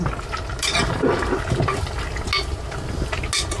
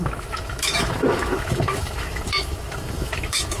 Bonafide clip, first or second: first